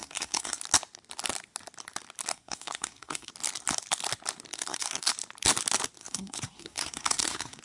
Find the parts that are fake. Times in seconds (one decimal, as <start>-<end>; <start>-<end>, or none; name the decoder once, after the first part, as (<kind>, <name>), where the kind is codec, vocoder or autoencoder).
0.0-0.6 (codec, SNAC); 2.3-3.3; 4.5-5.1; 6.0-7.6